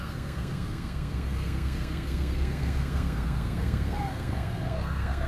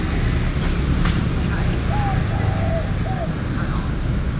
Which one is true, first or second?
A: second